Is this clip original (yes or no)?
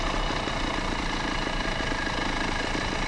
yes